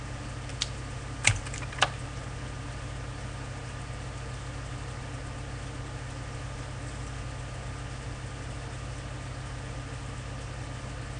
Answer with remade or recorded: recorded